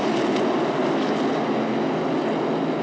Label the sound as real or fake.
real